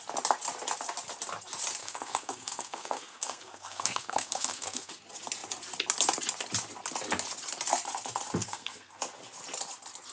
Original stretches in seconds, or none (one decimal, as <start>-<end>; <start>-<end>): 0.0-1.8; 4.9-8.4; 9.0-10.1